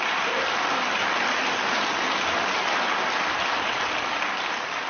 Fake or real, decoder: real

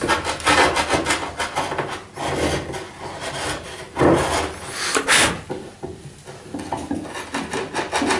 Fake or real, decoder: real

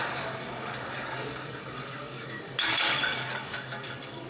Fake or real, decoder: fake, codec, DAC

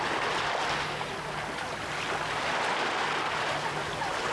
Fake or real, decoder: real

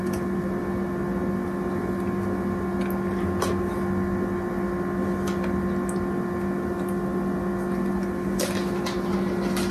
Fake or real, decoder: real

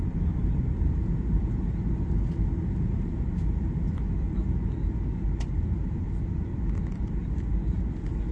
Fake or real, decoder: real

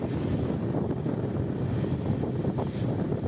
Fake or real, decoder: real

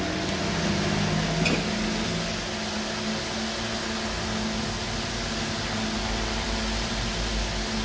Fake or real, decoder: real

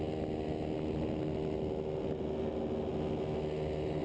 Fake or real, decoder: real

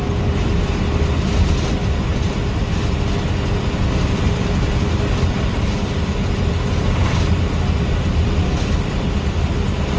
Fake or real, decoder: real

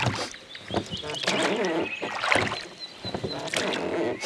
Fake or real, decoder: real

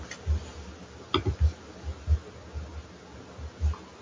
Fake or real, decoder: real